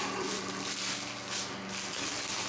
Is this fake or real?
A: real